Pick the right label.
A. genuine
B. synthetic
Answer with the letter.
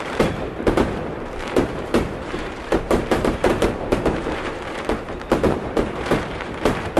B